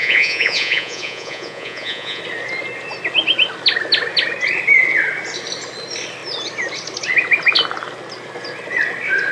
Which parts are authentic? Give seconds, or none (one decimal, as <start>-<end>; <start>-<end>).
2.2-9.3